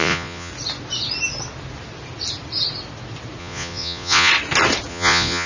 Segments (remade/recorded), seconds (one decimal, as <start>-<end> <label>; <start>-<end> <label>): 0.0-0.5 remade; 0.5-3.4 recorded; 3.4-4.3 remade; 4.3-4.9 recorded; 4.9-5.5 remade